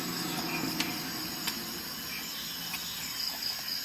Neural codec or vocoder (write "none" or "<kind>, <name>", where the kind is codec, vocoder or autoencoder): none